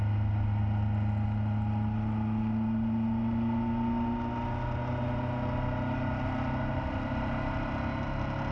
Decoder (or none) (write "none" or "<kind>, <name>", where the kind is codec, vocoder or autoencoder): none